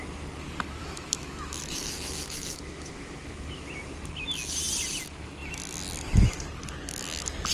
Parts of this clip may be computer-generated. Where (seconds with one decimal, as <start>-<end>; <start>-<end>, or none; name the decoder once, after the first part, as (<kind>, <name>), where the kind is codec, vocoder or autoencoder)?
0.8-3.7 (autoencoder, DAC-VAE)

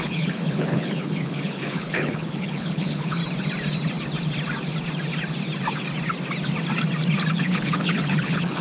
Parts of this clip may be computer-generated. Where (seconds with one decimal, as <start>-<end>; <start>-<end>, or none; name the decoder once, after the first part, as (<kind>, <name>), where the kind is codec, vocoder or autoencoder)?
0.0-3.2 (codec, HILCodec); 7.3-8.6

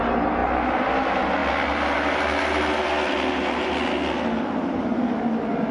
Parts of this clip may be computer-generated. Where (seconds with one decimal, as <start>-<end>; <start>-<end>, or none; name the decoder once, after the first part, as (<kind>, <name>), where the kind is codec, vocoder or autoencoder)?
none